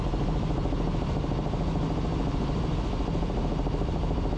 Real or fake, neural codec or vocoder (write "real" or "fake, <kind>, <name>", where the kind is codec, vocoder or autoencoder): real